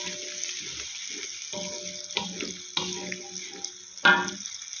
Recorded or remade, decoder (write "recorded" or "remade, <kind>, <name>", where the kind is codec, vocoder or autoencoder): recorded